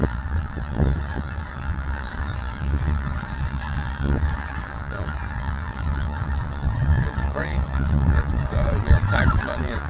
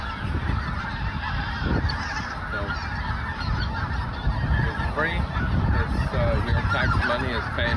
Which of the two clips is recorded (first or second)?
second